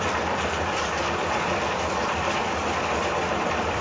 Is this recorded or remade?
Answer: remade